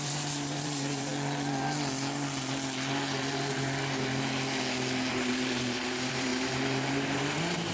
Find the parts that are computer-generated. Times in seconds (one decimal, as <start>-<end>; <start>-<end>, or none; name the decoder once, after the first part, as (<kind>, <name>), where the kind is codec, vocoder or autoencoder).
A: 0.0-1.1 (vocoder, BigVGAN v2); 5.1-7.7